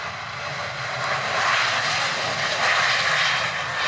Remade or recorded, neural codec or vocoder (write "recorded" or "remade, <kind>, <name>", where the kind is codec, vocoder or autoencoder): recorded